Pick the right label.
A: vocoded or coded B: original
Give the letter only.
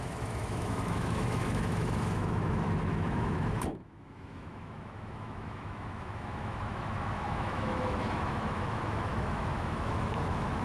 A